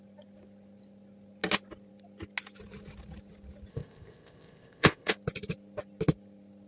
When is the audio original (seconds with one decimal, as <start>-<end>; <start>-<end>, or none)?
0.0-3.7; 5.1-6.7

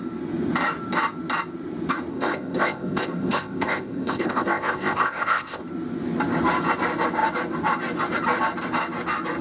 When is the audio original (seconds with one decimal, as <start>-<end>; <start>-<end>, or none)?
0.0-2.1; 5.6-9.4

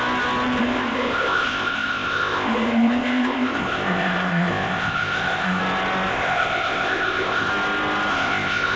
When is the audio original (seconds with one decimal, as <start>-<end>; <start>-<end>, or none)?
0.0-0.6; 5.6-6.1; 7.5-8.1